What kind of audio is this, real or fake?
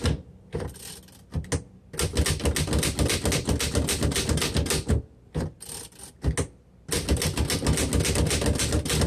real